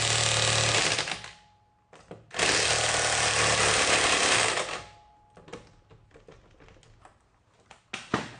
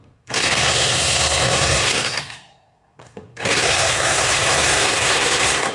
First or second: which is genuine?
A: first